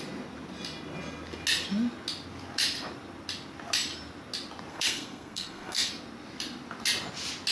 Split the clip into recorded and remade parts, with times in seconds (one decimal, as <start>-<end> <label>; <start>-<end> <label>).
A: 0.0-4.7 recorded; 4.7-5.9 remade; 5.9-7.5 recorded

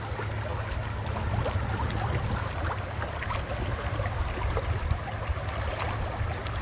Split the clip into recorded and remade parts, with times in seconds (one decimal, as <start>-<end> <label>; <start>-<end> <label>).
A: 0.0-6.6 recorded

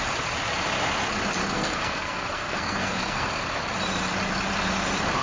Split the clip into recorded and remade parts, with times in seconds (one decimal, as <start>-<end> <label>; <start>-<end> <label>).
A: 0.0-1.4 recorded; 1.4-3.3 remade; 3.3-5.2 recorded

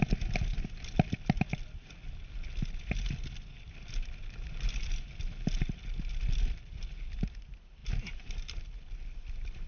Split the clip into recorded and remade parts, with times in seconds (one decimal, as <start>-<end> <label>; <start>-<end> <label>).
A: 0.0-9.7 recorded

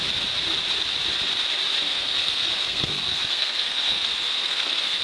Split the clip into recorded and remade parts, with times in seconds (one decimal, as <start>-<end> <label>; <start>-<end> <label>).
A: 0.0-1.9 recorded; 1.9-5.0 remade

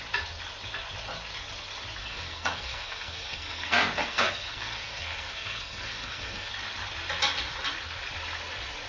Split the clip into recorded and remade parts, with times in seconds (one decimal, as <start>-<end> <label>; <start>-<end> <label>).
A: 0.0-2.0 recorded; 2.0-6.5 remade; 6.5-8.9 recorded

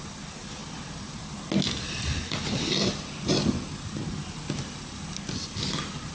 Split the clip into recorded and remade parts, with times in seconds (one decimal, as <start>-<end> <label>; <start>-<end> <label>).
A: 0.0-6.1 recorded